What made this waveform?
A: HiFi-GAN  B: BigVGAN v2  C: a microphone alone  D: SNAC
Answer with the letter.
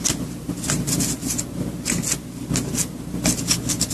C